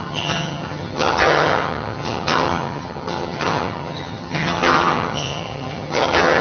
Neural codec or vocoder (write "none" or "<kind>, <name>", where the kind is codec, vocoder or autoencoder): vocoder, HiFi-GAN